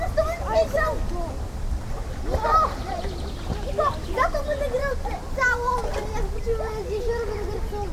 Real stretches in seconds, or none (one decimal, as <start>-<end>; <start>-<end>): 0.0-7.9